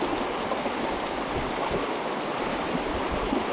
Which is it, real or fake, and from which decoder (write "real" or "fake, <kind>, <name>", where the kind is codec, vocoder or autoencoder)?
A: real